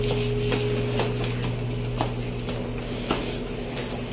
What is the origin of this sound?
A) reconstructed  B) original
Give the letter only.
B